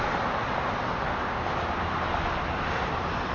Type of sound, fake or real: real